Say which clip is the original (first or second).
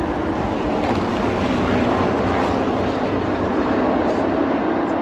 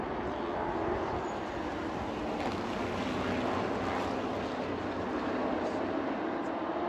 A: second